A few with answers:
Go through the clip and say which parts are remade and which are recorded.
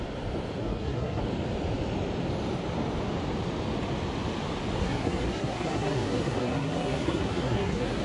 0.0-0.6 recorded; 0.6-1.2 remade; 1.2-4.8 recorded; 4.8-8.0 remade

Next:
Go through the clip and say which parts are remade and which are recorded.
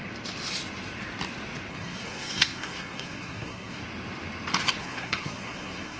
0.0-1.7 recorded; 1.7-3.8 remade; 3.8-4.8 recorded; 4.8-6.0 remade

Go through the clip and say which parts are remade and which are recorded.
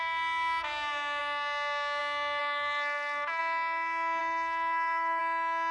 0.0-2.4 recorded; 2.4-3.4 remade; 3.4-4.2 recorded; 4.2-5.2 remade; 5.2-5.7 recorded